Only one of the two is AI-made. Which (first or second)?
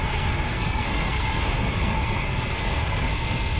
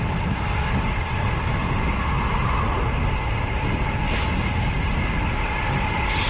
first